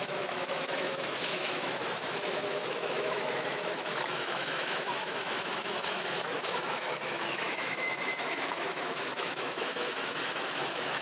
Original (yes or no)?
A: no